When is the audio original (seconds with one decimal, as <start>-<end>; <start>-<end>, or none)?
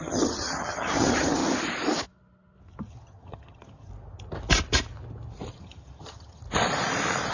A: 1.4-2.9; 3.9-5.5; 6.4-7.3